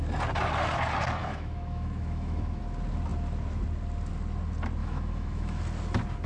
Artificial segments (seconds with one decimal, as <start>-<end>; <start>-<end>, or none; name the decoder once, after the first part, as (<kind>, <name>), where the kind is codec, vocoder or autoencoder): 1.2-2.6 (autoencoder, DAC-VAE); 4.8-5.6